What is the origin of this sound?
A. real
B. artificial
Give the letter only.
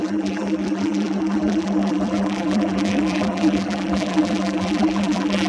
B